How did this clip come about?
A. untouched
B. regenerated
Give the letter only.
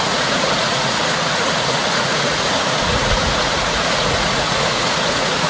B